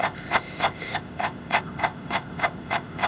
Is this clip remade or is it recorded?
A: remade